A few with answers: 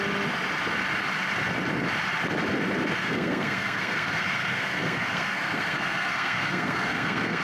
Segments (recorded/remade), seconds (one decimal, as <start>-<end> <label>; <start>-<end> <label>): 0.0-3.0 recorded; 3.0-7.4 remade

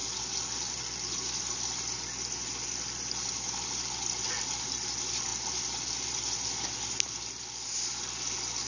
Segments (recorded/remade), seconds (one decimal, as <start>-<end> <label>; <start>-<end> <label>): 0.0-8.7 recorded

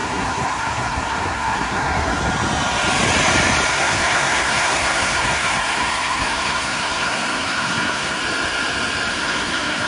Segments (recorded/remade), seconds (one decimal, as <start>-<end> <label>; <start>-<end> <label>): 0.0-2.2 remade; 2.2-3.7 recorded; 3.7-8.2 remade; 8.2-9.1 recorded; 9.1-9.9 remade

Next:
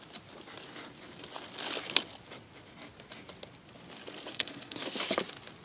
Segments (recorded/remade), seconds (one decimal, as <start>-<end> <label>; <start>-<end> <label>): 0.0-4.3 recorded; 4.3-4.8 remade; 4.8-5.6 recorded

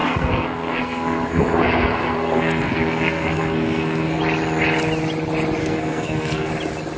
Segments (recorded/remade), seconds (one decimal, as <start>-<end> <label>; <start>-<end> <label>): 0.0-4.2 remade; 4.2-5.6 recorded; 5.6-6.5 remade; 6.5-7.0 recorded

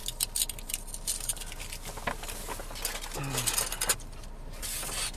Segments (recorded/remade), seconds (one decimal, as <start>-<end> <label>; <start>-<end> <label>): 0.0-5.2 recorded

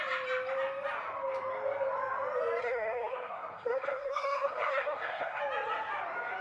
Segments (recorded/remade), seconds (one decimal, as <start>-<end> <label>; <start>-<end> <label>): 0.0-2.6 recorded; 2.6-5.4 remade; 5.4-6.4 recorded

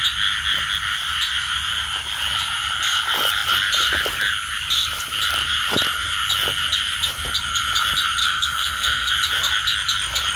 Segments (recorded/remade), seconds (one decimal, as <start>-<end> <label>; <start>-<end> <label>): 0.0-8.2 recorded; 8.2-9.1 remade; 9.1-10.4 recorded